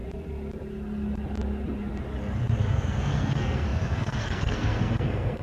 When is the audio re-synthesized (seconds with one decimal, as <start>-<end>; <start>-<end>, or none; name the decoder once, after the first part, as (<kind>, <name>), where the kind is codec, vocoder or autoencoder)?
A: 2.7-5.4 (codec, SNAC)